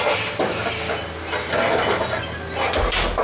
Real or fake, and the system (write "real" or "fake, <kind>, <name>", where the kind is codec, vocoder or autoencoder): real